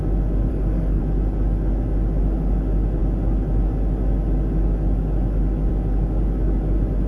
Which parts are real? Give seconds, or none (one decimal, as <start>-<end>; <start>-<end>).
0.0-0.5; 1.0-7.1